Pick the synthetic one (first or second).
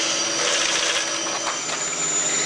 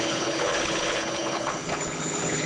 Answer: second